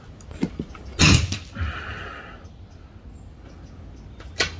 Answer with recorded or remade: recorded